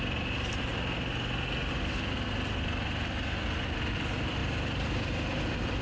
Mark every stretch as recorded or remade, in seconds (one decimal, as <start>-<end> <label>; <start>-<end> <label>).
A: 0.0-0.7 remade; 0.7-3.6 recorded; 3.6-5.8 remade